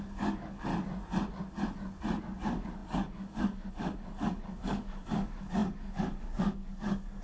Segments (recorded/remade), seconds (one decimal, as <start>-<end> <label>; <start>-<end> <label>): 0.0-0.7 remade; 0.7-2.2 recorded; 2.2-7.2 remade